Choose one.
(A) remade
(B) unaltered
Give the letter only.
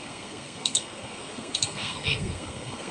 A